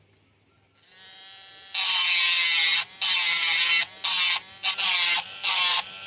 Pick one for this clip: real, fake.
real